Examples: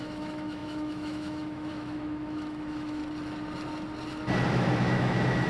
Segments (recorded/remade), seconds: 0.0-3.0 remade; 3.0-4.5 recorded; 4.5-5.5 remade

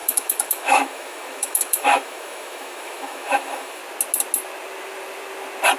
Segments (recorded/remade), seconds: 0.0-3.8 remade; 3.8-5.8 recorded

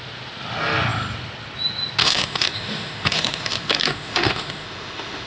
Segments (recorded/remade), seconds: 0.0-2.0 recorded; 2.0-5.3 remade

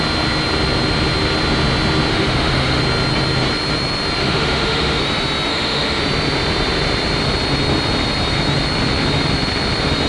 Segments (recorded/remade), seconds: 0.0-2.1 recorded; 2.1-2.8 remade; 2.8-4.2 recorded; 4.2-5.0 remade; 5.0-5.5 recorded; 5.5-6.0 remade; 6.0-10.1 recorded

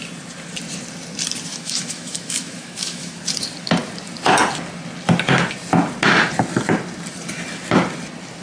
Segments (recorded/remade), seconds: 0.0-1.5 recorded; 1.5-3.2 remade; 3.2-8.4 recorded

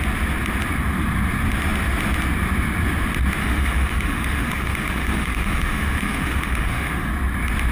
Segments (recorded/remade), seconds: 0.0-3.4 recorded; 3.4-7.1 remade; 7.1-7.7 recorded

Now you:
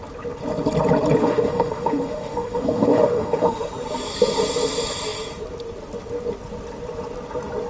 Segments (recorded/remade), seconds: 0.0-1.2 recorded; 1.2-3.7 remade; 3.7-7.7 recorded